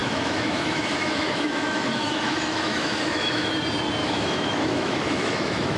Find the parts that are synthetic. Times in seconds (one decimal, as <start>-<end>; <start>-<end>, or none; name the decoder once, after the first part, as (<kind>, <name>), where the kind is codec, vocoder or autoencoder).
0.0-3.5 (autoencoder, DAC-VAE); 4.0-5.8